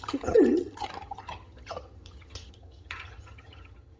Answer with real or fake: fake